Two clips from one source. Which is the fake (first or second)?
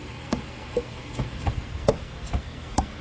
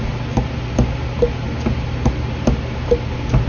first